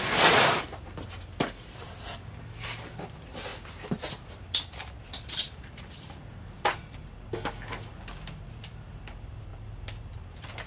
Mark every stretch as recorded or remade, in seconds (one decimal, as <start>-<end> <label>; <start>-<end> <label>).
0.0-3.5 remade; 3.5-5.0 recorded; 5.0-7.0 remade; 7.0-7.5 recorded; 7.5-10.7 remade